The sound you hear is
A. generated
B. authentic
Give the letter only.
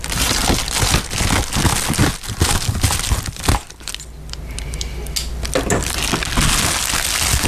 B